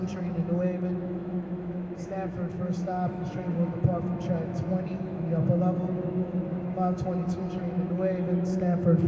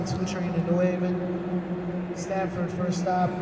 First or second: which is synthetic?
first